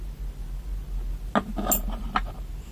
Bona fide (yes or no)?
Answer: yes